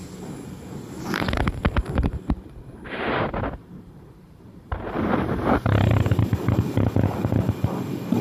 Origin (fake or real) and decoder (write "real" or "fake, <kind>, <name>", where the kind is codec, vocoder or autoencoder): fake, vocoder, BigVGAN v2